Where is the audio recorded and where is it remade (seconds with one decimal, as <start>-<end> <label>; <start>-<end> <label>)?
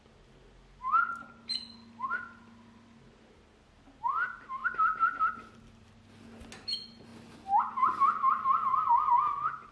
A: 0.0-9.7 recorded